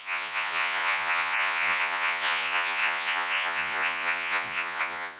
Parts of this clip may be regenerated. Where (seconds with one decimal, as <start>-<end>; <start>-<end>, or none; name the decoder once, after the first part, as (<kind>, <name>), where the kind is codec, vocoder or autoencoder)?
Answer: 0.0-5.2 (vocoder, Vocos)